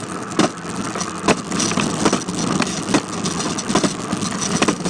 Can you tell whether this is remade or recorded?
recorded